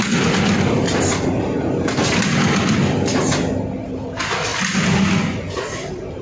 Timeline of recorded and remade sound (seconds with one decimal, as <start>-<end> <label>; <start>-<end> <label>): 0.0-6.2 recorded